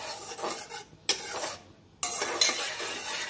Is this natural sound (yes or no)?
yes